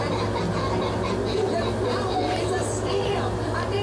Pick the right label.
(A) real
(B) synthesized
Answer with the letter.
A